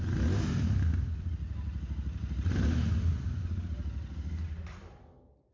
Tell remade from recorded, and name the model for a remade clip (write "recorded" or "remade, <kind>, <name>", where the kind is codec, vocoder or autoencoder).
recorded